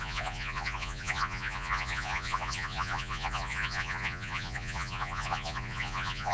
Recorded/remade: remade